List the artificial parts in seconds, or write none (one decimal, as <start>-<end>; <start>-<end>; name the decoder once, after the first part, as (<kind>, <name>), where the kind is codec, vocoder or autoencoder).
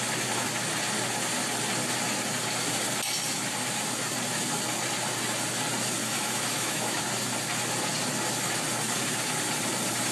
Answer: 6.0-7.0 (autoencoder, DAC-VAE)